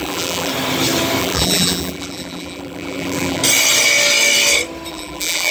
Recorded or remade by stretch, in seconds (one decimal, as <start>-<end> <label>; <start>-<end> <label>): 0.0-0.5 remade; 0.5-1.2 recorded; 1.2-3.4 remade; 3.4-4.9 recorded; 4.9-5.5 remade